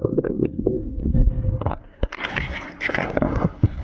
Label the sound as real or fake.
fake